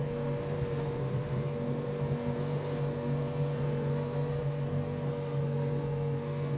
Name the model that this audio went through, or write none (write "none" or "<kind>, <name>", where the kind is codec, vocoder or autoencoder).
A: codec, SNAC